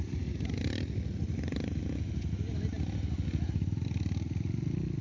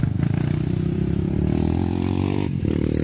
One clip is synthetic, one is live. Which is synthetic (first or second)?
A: second